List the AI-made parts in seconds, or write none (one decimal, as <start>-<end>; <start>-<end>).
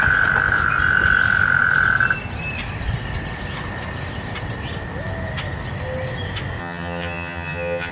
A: 6.6-7.9